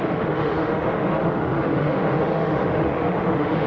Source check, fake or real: fake